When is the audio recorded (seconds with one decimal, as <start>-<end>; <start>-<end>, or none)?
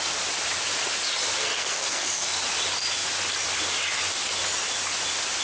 0.0-1.4; 2.4-5.4